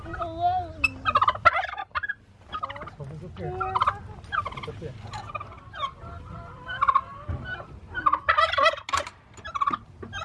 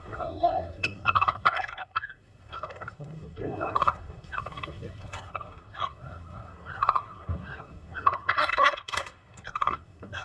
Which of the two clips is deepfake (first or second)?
second